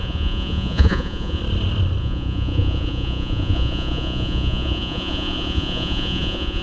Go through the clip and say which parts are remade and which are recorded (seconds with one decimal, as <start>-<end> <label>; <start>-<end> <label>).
0.0-1.4 remade; 1.4-2.0 recorded; 2.0-6.6 remade